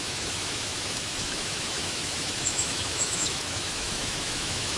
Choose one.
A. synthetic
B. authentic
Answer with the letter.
A